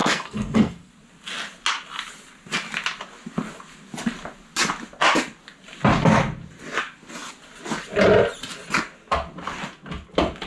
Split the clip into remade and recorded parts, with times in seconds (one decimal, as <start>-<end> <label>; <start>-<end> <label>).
0.0-0.9 remade; 0.9-10.5 recorded